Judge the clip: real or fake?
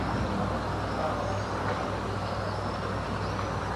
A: real